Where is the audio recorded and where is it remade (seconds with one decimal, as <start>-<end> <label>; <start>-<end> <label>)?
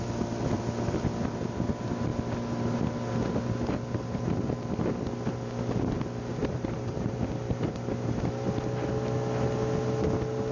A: 0.0-6.4 recorded; 6.4-7.3 remade; 7.3-10.5 recorded